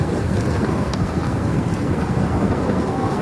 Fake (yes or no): yes